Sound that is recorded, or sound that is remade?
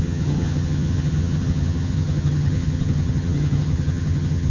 remade